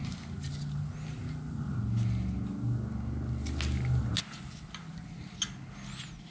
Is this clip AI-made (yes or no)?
no